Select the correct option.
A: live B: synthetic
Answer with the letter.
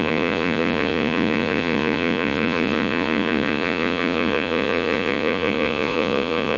B